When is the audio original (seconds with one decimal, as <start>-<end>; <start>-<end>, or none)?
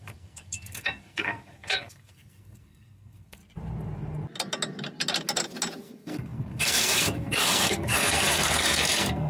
3.4-5.8